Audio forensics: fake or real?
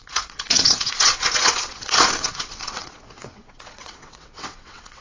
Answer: fake